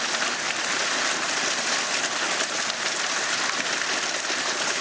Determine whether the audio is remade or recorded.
recorded